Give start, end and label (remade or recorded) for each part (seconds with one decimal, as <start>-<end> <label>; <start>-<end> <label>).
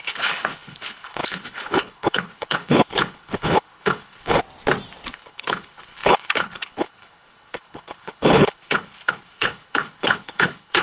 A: 0.0-4.4 remade; 4.4-5.1 recorded; 5.1-10.8 remade